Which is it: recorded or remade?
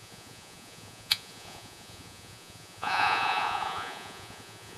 remade